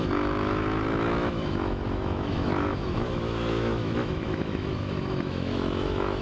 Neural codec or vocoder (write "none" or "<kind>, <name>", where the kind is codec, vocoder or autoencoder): autoencoder, DAC-VAE